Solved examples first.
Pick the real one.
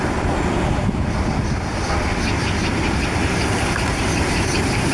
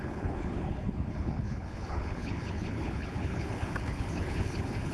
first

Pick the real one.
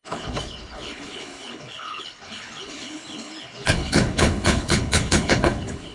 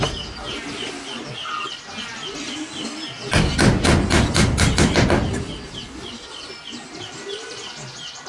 second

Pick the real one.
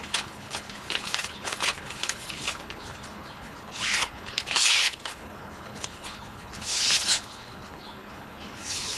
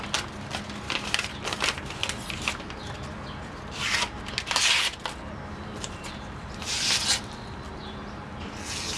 second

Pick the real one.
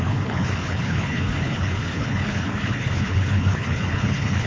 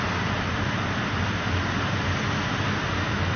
second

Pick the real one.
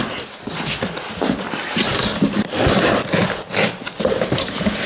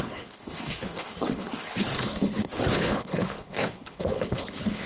first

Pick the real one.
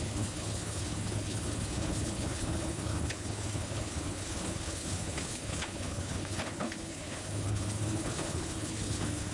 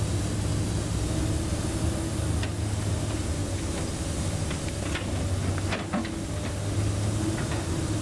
second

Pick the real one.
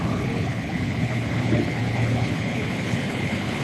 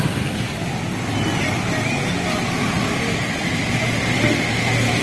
second